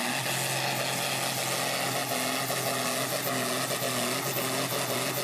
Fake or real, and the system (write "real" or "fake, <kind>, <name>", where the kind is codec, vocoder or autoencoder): real